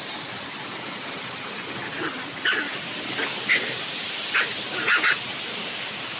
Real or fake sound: real